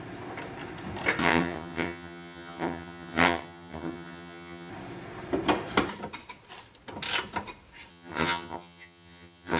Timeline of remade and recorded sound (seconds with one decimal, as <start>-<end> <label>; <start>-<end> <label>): 0.0-1.2 recorded; 1.2-4.7 remade; 4.7-7.9 recorded; 7.9-9.6 remade